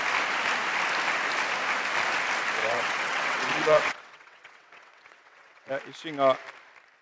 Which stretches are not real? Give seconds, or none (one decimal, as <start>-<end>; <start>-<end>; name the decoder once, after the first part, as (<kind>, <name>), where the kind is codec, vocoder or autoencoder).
2.6-5.7 (vocoder, WaveNeXt)